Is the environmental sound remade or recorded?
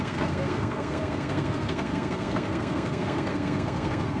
remade